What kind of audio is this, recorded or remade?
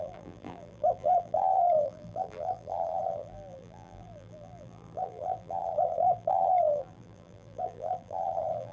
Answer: remade